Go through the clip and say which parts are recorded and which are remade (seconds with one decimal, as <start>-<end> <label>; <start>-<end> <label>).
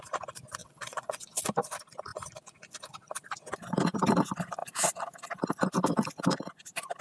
0.0-0.6 recorded; 0.6-1.4 remade; 1.4-7.0 recorded